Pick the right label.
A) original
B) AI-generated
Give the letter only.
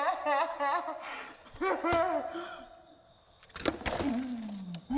A